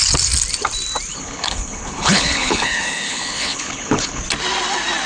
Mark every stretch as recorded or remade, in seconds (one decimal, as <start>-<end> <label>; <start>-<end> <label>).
0.0-1.1 recorded; 1.1-4.2 remade; 4.2-5.1 recorded